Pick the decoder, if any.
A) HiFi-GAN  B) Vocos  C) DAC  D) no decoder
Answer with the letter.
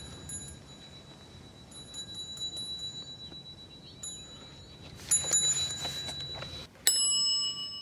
D